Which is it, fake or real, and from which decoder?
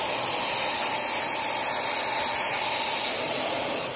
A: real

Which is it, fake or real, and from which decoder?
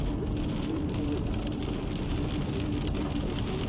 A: real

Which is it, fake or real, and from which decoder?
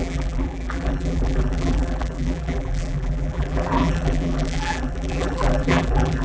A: fake, vocoder, BigVGAN v2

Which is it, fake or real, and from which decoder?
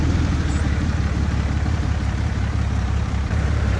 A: fake, vocoder, BigVGAN v2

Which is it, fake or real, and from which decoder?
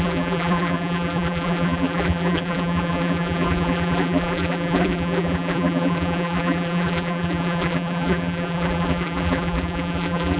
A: fake, vocoder, BigVGAN v2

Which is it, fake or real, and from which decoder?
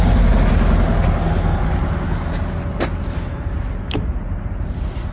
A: real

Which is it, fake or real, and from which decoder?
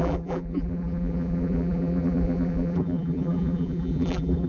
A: fake, vocoder, BigVGAN v2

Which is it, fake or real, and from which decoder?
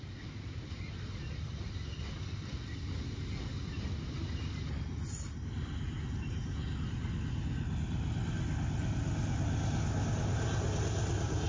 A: real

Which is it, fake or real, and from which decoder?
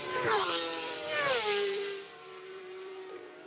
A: fake, vocoder, BigVGAN v2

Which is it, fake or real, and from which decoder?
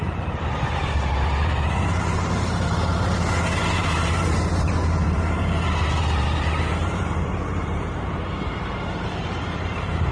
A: fake, vocoder, BigVGAN v2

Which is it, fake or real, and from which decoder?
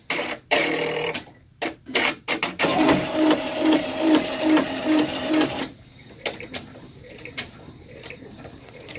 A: fake, vocoder, BigVGAN v2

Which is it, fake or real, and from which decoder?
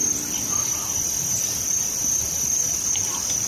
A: real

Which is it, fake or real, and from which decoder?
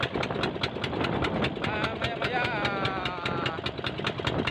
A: real